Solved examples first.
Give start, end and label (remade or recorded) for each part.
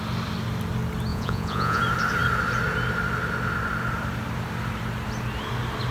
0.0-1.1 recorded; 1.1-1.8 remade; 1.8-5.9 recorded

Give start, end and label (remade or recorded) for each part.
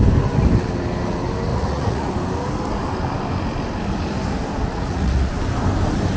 0.0-1.5 recorded; 1.5-2.1 remade; 2.1-4.7 recorded; 4.7-5.3 remade; 5.3-6.2 recorded